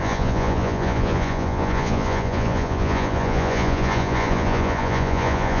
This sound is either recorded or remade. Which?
remade